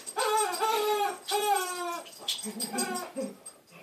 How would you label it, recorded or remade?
remade